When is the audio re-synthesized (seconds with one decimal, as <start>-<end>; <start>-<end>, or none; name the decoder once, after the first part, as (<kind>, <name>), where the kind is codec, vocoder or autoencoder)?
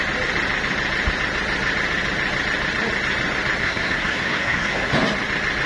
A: 3.6-4.9 (codec, SNAC)